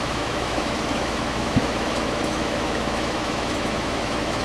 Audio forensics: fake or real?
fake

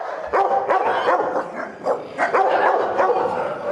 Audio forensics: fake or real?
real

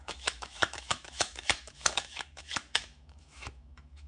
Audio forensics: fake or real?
fake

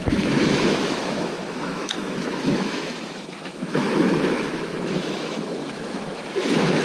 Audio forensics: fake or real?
fake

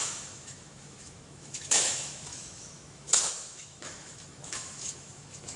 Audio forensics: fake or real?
fake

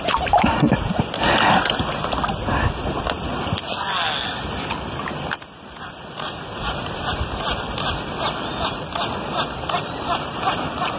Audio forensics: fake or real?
real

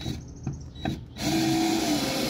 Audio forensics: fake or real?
real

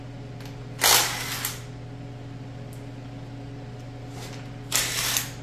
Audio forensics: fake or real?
real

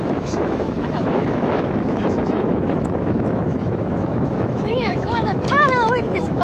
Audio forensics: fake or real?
fake